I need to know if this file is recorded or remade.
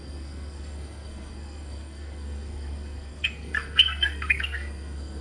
remade